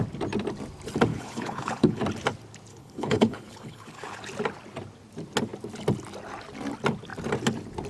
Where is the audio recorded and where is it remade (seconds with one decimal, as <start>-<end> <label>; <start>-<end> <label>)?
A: 0.0-1.1 recorded; 1.1-2.0 remade; 2.0-2.7 recorded; 2.7-4.2 remade; 4.2-7.9 recorded